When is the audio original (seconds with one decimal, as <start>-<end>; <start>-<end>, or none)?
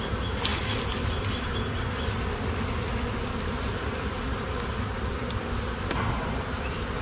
0.0-7.0